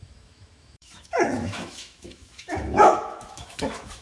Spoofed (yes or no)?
yes